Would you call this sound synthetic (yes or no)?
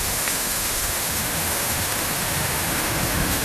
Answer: yes